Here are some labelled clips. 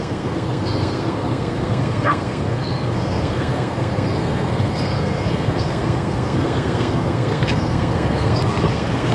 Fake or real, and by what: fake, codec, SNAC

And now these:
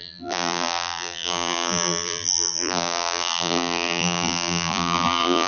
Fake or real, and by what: fake, vocoder, BigVGAN v2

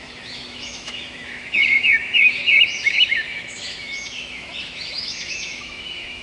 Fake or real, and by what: fake, autoencoder, DAC-VAE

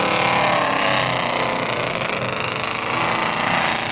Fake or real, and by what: real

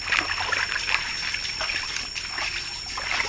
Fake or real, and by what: real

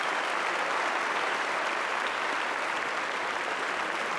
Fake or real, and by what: real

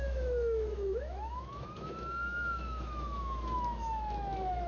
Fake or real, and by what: fake, autoencoder, DAC-VAE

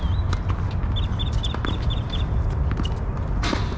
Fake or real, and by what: real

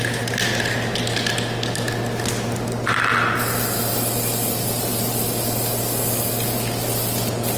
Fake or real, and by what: real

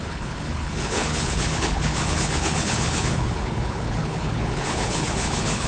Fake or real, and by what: fake, codec, HILCodec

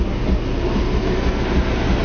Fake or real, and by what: real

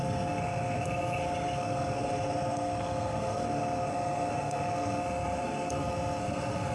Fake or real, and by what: fake, codec, SNAC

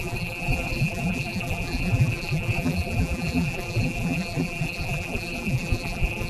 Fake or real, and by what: fake, vocoder, BigVGAN v2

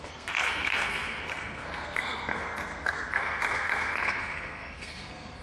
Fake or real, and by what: fake, codec, SNAC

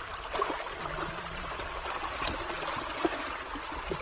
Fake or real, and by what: real